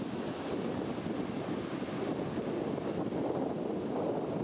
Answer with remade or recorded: recorded